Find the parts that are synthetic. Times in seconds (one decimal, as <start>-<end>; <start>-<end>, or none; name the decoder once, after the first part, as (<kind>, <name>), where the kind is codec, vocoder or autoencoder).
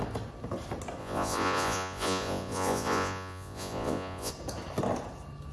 1.0-4.3 (vocoder, Vocos)